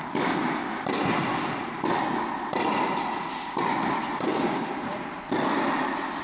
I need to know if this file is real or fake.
real